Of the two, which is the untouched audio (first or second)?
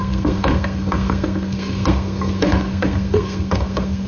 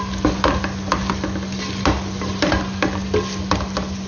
second